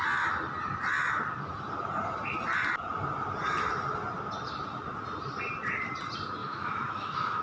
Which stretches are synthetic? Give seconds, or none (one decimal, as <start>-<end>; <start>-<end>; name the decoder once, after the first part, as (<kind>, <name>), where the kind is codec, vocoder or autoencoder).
6.4-7.4 (autoencoder, DAC-VAE)